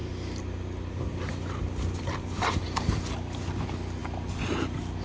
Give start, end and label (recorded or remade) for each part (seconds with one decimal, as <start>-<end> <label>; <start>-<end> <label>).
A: 0.0-5.0 recorded